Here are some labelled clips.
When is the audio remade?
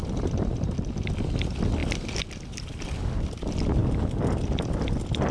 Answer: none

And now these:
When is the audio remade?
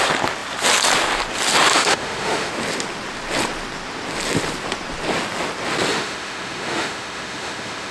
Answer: 1.7-2.5 (autoencoder, DAC-VAE); 5.9-7.9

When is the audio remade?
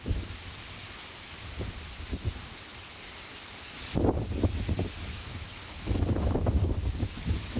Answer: 5.3-7.6 (autoencoder, DAC-VAE)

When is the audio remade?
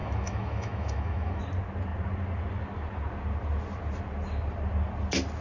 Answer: 0.0-1.4 (autoencoder, DAC-VAE)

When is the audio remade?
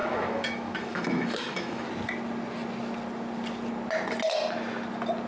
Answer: 0.0-1.9 (autoencoder, DAC-VAE)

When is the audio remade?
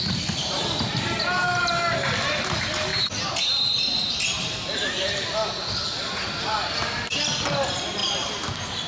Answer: none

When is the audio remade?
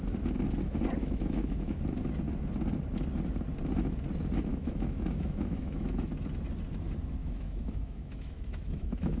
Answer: 1.0-1.8 (autoencoder, DAC-VAE); 4.5-6.1; 7.2-9.2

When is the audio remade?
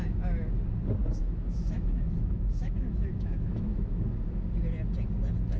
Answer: 1.2-4.6 (autoencoder, DAC-VAE)